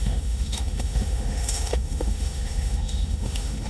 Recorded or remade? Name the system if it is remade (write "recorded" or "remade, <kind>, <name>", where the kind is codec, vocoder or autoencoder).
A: remade, autoencoder, DAC-VAE